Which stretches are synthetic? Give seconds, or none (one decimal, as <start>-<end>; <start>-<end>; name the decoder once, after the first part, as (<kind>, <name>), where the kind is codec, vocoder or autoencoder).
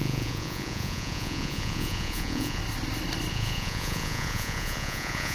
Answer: 0.0-2.6 (vocoder, Vocos); 3.3-5.3